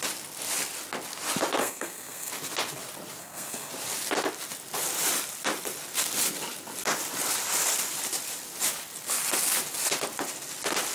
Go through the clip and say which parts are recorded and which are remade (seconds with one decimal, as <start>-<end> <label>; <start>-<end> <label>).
0.0-1.6 recorded; 1.6-2.3 remade; 2.3-3.2 recorded; 3.2-3.7 remade; 3.7-10.9 recorded